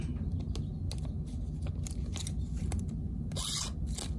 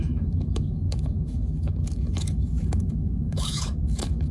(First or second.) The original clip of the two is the first